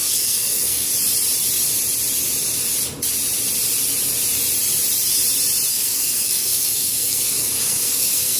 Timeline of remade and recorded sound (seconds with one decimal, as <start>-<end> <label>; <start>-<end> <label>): 0.0-0.9 remade; 0.9-5.7 recorded; 5.7-8.4 remade